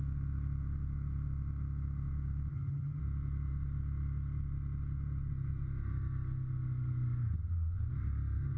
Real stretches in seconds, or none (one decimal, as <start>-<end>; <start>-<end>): 0.0-2.5; 3.0-8.6